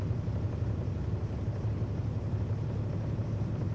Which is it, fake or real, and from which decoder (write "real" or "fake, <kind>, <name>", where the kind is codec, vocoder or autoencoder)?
real